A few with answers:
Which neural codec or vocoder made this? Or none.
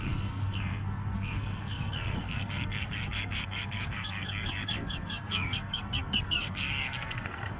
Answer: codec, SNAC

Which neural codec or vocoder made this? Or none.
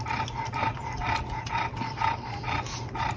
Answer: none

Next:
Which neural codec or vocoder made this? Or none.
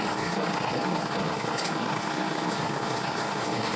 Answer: codec, SNAC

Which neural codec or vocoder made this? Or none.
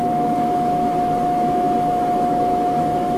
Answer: autoencoder, DAC-VAE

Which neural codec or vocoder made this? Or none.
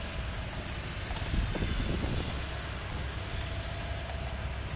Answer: none